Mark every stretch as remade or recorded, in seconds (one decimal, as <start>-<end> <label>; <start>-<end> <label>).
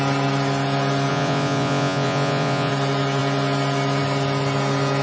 0.0-1.1 recorded; 1.1-2.7 remade; 2.7-5.0 recorded